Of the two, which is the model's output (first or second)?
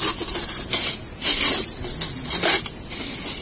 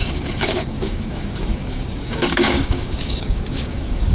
second